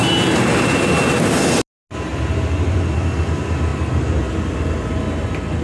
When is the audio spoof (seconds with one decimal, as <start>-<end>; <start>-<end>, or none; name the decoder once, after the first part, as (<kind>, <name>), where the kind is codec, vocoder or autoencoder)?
2.1-2.9 (vocoder, BigVGAN v2)

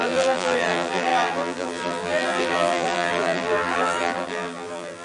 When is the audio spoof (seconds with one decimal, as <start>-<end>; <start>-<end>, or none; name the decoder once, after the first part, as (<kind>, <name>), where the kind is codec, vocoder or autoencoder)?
0.0-5.0 (vocoder, BigVGAN v2)